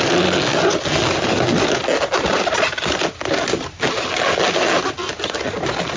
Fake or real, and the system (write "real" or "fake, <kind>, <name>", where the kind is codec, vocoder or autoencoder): real